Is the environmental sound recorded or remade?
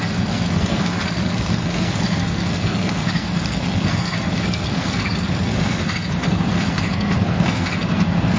remade